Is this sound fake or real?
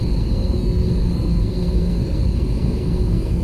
fake